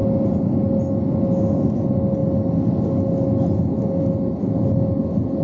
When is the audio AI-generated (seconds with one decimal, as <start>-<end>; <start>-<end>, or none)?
none